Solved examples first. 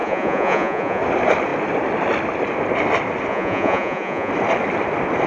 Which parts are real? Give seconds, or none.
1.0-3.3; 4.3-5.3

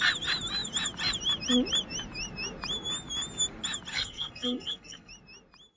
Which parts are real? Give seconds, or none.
0.0-3.9; 5.1-5.8

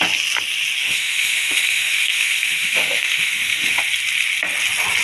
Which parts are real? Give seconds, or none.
0.0-0.8; 3.8-5.0

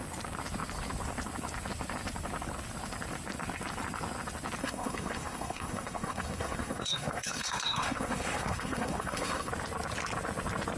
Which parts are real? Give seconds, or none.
0.0-4.6; 9.5-10.8

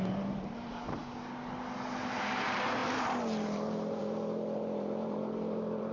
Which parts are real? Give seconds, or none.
1.0-2.3